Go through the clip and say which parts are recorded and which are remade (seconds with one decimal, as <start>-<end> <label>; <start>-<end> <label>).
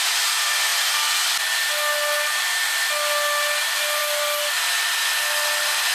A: 0.0-5.9 recorded